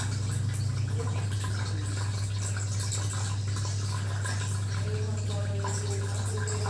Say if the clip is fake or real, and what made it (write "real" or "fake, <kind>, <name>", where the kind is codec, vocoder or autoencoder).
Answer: real